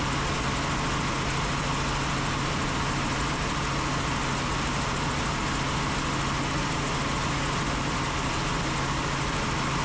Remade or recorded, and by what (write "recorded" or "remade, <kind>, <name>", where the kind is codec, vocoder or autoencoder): recorded